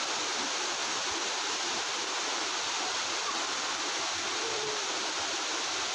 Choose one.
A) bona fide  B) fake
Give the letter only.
A